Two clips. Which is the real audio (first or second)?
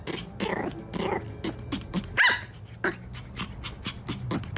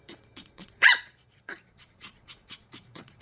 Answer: first